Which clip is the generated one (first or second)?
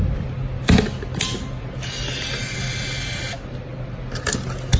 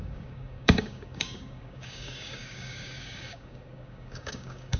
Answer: second